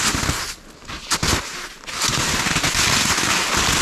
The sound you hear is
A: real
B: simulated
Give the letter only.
A